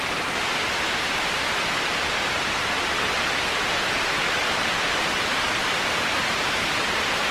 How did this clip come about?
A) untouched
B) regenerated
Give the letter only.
B